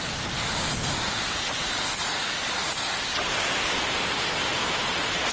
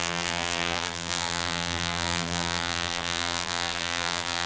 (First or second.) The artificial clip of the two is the second